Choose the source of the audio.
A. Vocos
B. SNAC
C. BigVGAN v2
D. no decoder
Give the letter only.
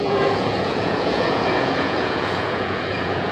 A